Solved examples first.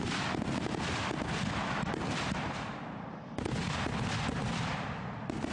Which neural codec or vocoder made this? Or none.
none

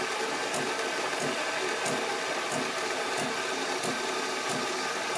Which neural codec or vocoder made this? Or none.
none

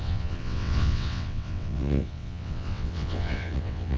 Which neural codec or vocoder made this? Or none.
vocoder, WaveNeXt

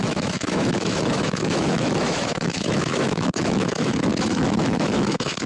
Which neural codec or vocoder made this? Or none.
autoencoder, DAC-VAE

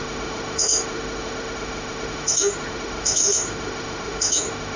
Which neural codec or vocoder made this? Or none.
autoencoder, DAC-VAE